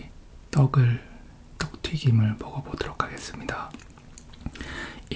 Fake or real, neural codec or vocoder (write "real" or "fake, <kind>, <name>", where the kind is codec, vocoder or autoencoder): real